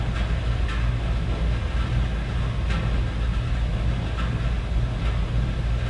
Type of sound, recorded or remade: recorded